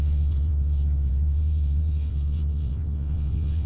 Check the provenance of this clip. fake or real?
fake